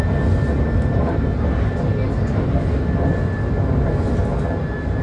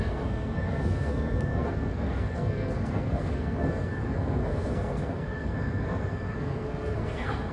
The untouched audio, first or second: first